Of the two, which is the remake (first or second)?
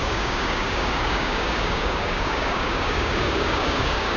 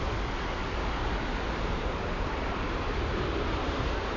first